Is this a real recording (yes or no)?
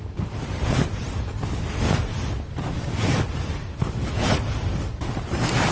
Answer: yes